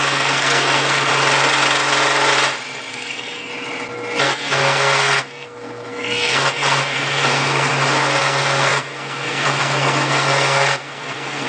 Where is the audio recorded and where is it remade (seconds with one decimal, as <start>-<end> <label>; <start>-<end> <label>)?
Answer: 0.0-1.1 remade; 1.1-2.9 recorded; 2.9-3.5 remade; 3.5-4.2 recorded; 4.2-7.7 remade; 7.7-8.2 recorded; 8.2-11.5 remade